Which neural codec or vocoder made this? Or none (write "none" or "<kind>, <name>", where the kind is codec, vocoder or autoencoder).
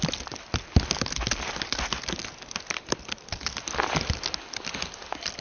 none